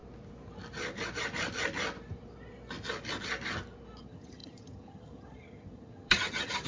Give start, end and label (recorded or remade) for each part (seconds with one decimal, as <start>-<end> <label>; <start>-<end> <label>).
0.0-4.0 recorded; 4.0-6.7 remade